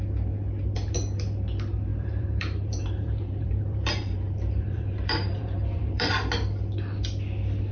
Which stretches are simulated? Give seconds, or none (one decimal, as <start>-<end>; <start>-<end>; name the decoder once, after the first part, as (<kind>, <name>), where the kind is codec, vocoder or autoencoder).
1.9-6.1 (vocoder, BigVGAN v2)